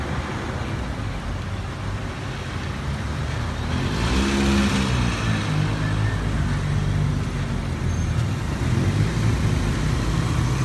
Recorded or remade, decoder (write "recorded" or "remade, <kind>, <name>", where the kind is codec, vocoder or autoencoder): recorded